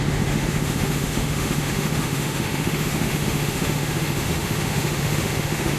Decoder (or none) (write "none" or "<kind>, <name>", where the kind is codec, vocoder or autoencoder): autoencoder, DAC-VAE